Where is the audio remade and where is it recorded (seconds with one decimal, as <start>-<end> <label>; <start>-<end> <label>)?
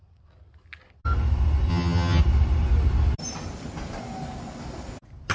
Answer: 0.0-1.7 recorded; 1.7-2.2 remade; 2.2-5.3 recorded